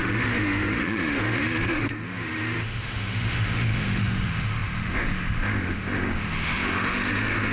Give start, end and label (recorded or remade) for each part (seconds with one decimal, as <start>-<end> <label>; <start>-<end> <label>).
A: 0.0-7.5 remade